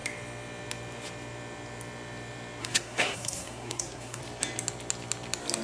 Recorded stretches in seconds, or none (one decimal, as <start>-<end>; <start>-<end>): 0.0-2.6; 4.2-5.6